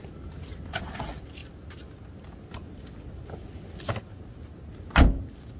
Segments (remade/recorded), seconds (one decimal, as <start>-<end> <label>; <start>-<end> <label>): 0.0-5.6 recorded